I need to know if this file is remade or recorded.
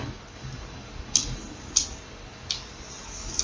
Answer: recorded